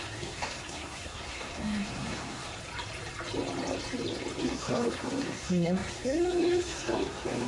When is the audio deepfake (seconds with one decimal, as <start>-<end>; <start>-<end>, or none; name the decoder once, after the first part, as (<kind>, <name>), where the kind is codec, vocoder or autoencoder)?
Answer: 0.0-2.5 (codec, SNAC); 4.4-7.5